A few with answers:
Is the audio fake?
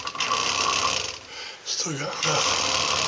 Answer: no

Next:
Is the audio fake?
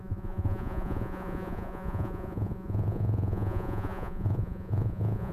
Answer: yes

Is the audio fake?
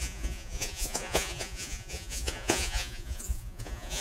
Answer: yes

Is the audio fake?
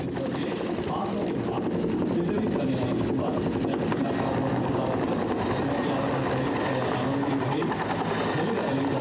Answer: no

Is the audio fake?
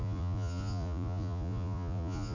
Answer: yes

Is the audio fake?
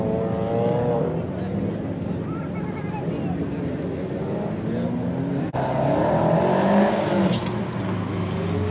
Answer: no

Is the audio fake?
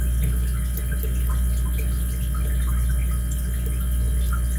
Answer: no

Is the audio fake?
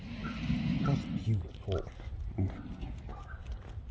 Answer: no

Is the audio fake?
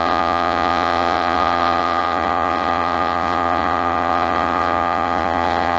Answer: yes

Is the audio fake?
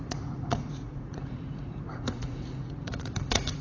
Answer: yes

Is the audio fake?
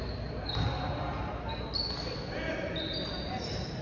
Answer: no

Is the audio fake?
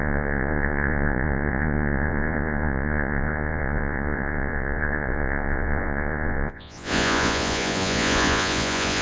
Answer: yes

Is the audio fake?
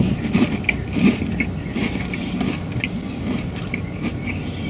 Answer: no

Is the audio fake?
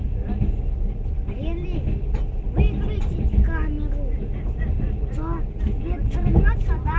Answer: no